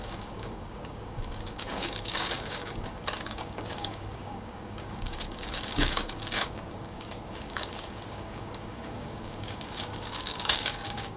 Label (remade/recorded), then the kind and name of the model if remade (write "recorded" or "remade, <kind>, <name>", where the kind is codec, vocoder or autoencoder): remade, codec, DAC